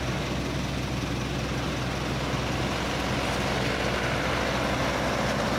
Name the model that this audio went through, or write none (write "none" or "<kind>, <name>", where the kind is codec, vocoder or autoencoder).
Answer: none